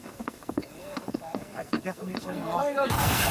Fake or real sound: fake